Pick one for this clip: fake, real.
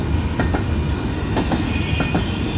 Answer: real